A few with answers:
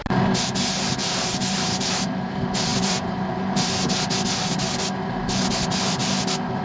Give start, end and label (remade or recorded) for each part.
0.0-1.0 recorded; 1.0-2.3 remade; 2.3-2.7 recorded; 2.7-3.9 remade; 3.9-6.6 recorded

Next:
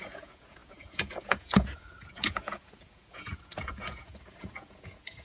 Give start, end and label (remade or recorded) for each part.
0.0-5.2 remade

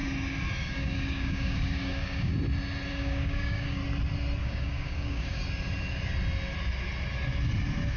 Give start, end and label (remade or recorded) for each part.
0.0-0.6 recorded; 0.6-2.3 remade; 2.3-2.9 recorded; 2.9-3.8 remade; 3.8-4.4 recorded; 4.4-5.4 remade; 5.4-8.0 recorded